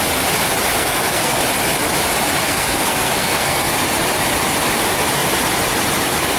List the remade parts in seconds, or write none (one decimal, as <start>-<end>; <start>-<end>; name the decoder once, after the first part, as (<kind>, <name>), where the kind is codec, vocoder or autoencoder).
0.7-1.4 (codec, SNAC); 2.4-3.7